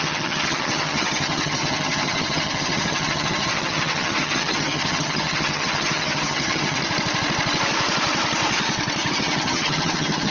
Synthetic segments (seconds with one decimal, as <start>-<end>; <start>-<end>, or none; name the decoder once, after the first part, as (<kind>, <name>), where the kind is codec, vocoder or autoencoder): 0.0-6.8 (vocoder, HiFi-GAN); 9.1-10.3